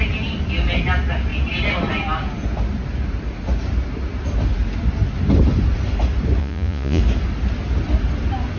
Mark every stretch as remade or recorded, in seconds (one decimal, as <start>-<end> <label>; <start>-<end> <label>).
0.0-6.4 recorded; 6.4-7.0 remade; 7.0-8.6 recorded

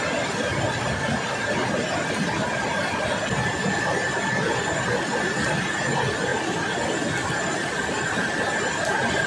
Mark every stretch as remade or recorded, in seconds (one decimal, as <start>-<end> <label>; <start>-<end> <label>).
0.0-9.3 recorded